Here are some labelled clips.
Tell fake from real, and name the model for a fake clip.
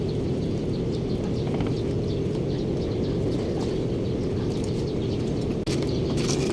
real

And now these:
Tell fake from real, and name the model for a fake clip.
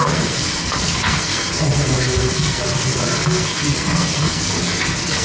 fake, codec, SNAC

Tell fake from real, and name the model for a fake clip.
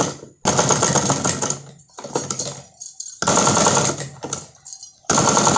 real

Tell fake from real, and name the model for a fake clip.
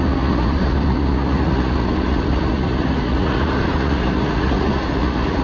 fake, vocoder, Vocos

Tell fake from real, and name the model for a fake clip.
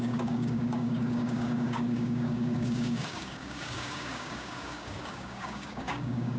fake, codec, DAC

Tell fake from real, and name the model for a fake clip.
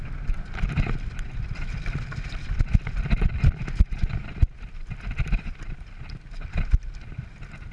real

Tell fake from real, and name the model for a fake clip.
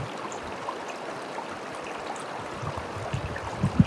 real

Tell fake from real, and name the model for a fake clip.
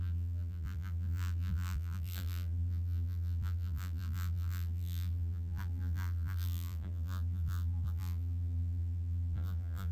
fake, vocoder, BigVGAN v2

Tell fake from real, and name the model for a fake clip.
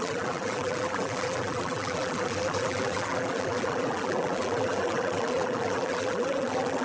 fake, vocoder, BigVGAN v2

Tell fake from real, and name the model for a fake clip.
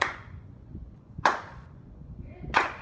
fake, vocoder, Vocos